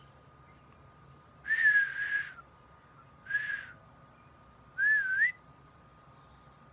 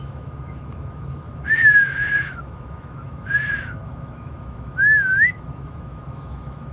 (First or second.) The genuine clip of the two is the first